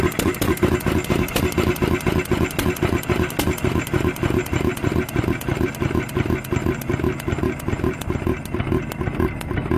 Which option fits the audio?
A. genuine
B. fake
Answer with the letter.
A